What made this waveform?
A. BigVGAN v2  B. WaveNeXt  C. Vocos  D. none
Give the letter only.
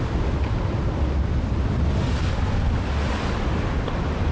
D